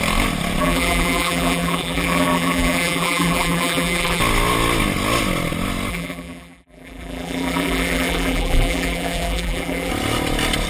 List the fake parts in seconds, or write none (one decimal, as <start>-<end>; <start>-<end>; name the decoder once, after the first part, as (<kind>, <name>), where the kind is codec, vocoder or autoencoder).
0.6-4.2 (vocoder, BigVGAN v2); 5.9-9.9